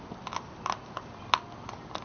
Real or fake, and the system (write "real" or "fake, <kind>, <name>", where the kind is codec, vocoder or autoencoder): real